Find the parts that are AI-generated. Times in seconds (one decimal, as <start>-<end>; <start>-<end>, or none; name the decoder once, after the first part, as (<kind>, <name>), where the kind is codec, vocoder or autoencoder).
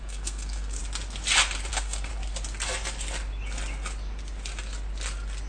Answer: 0.0-0.8 (codec, SNAC); 1.7-2.1